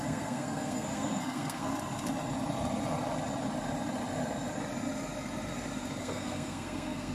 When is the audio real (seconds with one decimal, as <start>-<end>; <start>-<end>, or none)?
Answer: 1.7-6.0